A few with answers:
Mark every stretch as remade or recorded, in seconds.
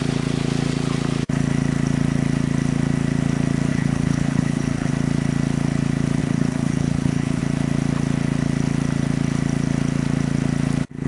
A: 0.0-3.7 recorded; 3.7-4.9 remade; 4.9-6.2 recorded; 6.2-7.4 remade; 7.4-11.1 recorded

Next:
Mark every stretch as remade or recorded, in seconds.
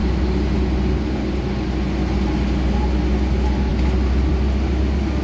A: 0.0-5.2 recorded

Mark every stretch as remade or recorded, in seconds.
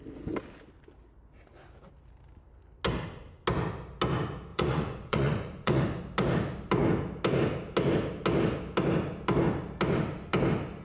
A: 0.0-4.5 recorded; 4.5-5.8 remade; 5.8-10.8 recorded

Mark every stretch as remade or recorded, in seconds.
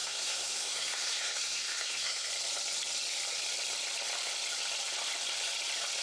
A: 0.0-2.3 remade; 2.3-6.0 recorded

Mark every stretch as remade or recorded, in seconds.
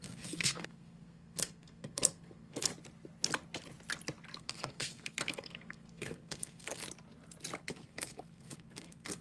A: 0.0-2.7 remade; 2.7-4.4 recorded; 4.4-6.8 remade; 6.8-7.7 recorded; 7.7-9.2 remade